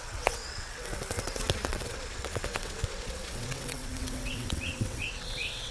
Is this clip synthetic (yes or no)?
yes